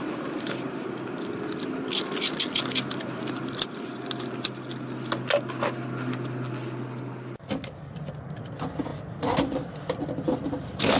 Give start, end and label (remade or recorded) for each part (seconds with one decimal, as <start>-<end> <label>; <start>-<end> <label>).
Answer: 0.0-11.0 recorded